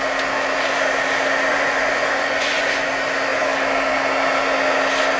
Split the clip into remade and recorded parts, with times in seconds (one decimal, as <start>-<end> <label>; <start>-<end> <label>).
0.0-1.5 recorded; 1.5-2.9 remade; 2.9-5.2 recorded